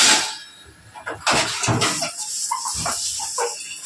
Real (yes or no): yes